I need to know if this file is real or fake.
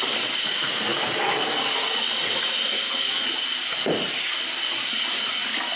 real